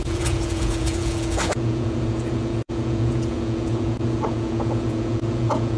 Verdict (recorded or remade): remade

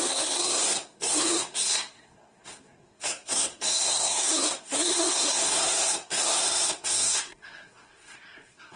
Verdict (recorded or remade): remade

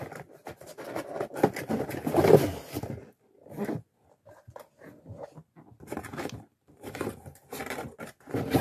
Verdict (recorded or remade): recorded